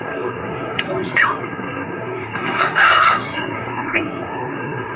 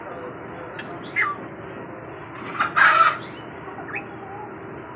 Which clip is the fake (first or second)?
first